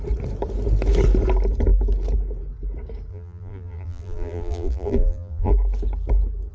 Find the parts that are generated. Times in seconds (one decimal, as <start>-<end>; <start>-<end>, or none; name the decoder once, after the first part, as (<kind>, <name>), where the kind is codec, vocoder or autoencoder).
3.1-5.5 (vocoder, BigVGAN v2)